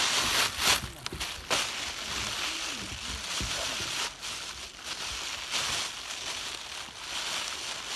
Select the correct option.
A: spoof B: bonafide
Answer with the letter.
B